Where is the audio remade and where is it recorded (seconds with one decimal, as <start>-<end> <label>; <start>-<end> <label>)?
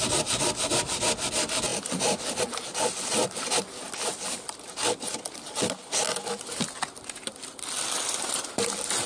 0.0-9.1 recorded